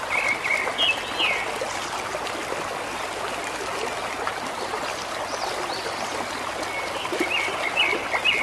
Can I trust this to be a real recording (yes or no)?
yes